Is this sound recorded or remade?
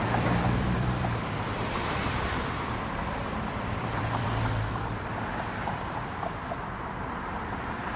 remade